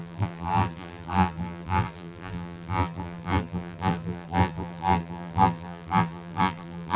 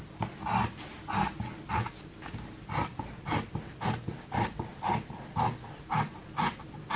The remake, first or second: first